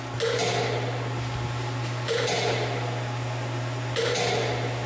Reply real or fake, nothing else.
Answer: real